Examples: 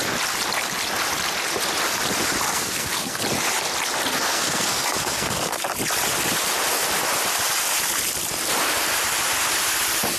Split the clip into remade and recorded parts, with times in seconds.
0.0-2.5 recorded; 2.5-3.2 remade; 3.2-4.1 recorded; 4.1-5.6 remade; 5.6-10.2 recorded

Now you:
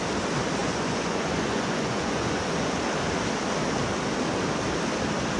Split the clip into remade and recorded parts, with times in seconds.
0.0-0.6 recorded; 0.6-2.8 remade; 2.8-5.4 recorded

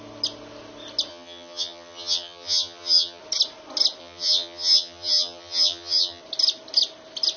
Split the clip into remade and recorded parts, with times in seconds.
0.0-1.1 recorded; 1.1-3.2 remade; 3.2-4.0 recorded; 4.0-6.2 remade; 6.2-7.4 recorded